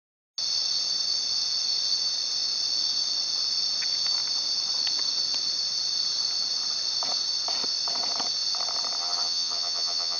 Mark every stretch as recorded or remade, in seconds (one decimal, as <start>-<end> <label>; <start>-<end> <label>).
0.0-9.0 recorded; 9.0-10.2 remade